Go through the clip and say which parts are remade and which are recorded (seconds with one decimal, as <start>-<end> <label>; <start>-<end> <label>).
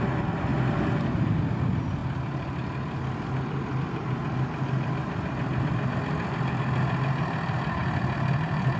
0.0-7.8 remade; 7.8-8.4 recorded; 8.4-8.8 remade